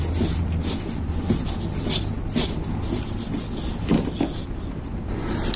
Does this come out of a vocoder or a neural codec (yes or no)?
no